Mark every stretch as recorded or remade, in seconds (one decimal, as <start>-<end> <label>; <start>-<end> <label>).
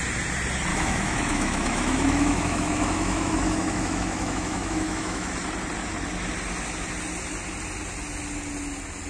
0.0-0.7 recorded; 0.7-5.3 remade; 5.3-9.1 recorded